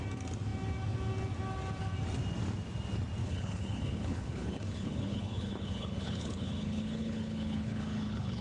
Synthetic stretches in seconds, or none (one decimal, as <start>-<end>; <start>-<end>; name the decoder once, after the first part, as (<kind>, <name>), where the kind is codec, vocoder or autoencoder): 3.2-8.4 (codec, HILCodec)